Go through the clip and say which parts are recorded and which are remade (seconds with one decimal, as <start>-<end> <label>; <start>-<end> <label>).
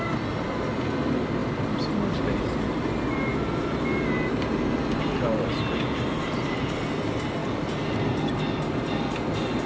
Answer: 0.0-9.7 recorded